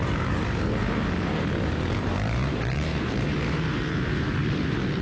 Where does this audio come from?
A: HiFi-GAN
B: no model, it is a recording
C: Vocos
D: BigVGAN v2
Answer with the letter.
D